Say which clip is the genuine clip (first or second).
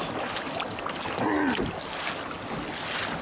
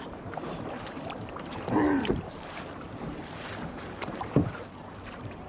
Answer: first